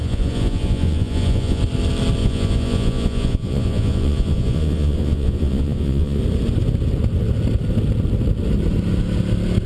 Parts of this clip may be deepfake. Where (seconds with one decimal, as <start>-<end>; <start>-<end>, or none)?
0.0-1.6; 2.2-6.2